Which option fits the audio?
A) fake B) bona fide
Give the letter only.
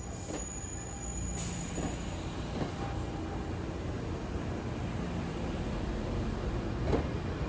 B